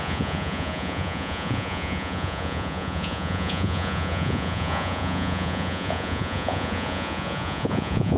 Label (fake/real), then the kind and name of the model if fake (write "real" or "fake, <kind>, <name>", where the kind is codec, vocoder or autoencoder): fake, vocoder, Vocos